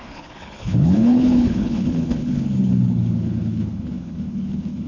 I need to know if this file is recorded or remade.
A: remade